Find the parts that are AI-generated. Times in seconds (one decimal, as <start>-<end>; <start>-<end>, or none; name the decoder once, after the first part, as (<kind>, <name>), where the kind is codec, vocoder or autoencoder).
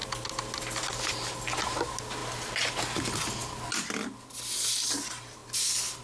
none